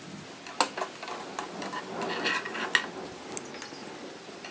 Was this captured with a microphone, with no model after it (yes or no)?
yes